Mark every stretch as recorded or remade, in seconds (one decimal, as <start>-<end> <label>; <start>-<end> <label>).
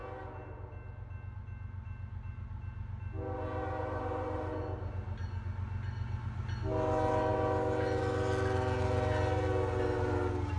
0.0-10.6 recorded